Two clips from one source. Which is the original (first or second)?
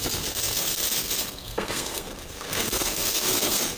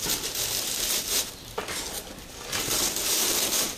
second